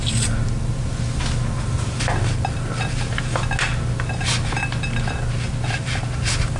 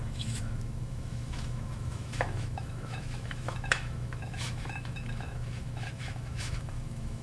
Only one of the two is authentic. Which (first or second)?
first